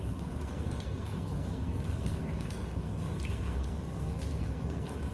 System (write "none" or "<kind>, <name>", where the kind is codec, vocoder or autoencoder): codec, SNAC